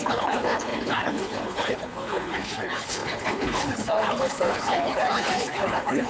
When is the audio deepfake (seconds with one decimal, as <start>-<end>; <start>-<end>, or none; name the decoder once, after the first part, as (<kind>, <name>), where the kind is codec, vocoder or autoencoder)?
0.0-6.1 (codec, HILCodec)